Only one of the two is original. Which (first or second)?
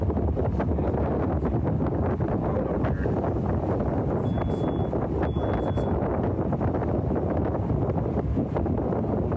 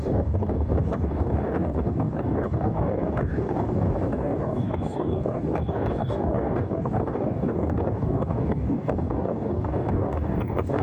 first